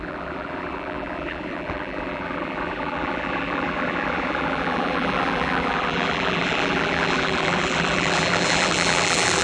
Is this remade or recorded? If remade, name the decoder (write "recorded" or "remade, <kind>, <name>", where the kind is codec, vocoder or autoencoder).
remade, vocoder, BigVGAN v2